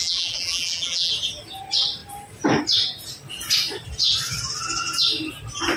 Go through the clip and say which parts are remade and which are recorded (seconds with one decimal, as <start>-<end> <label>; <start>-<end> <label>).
0.0-1.1 remade; 1.1-5.8 recorded